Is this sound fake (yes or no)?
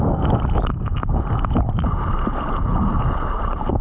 no